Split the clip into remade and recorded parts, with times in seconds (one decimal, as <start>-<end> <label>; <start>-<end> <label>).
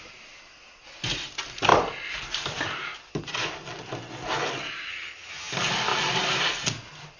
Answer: 0.0-4.9 recorded; 4.9-5.5 remade; 5.5-7.2 recorded